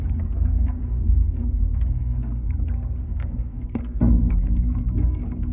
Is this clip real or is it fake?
fake